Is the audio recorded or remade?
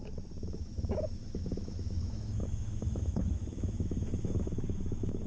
remade